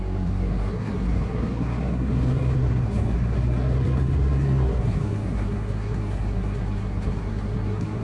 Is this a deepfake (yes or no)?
yes